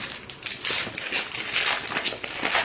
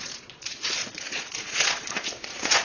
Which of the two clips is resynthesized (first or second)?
second